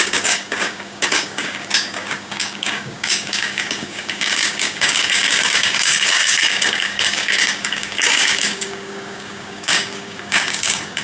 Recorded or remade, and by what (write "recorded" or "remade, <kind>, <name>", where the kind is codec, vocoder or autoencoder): remade, codec, DAC